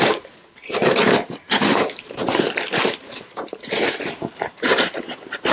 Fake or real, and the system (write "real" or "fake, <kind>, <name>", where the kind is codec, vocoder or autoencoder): fake, vocoder, BigVGAN v2